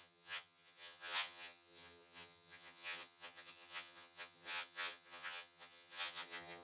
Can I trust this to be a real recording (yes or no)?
no